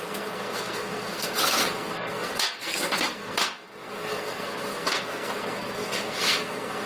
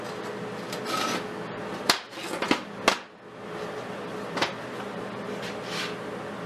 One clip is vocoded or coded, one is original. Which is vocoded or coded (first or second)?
first